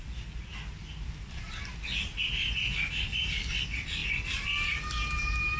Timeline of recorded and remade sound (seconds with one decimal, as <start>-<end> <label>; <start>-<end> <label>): 0.0-5.6 recorded